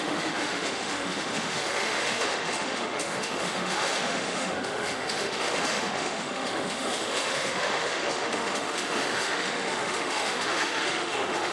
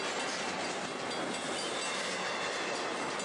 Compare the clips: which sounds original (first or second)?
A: second